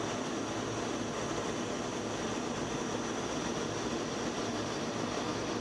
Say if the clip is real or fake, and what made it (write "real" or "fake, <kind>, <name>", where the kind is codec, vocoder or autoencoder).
real